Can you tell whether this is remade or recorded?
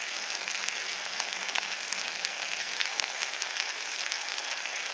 remade